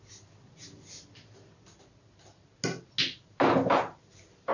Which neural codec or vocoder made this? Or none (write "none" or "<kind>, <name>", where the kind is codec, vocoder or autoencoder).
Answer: none